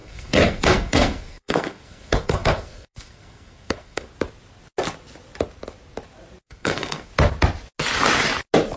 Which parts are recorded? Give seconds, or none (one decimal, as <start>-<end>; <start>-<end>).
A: 4.1-6.4; 7.1-8.8